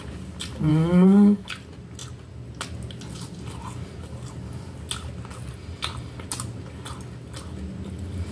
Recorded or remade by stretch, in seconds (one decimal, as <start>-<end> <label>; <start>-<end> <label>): 0.0-0.7 recorded; 0.7-1.5 remade; 1.5-8.3 recorded